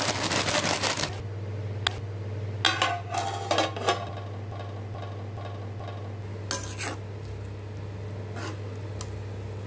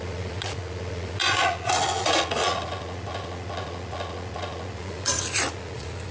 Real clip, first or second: first